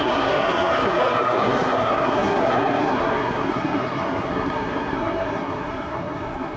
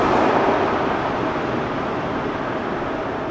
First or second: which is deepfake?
first